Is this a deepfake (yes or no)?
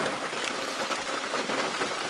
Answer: no